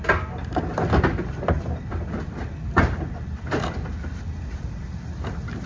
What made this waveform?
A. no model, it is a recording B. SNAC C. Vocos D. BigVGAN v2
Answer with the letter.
D